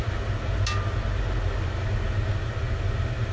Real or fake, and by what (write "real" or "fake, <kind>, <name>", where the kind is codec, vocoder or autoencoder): real